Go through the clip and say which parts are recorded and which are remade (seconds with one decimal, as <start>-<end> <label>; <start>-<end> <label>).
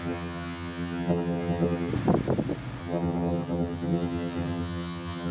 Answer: 0.0-1.9 remade; 1.9-2.8 recorded; 2.8-5.3 remade